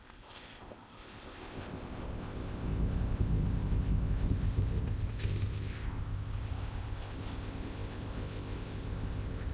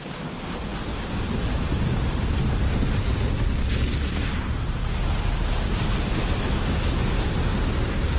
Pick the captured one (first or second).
second